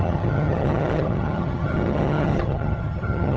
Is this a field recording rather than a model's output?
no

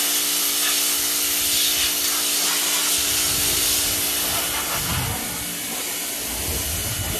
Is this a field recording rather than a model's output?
yes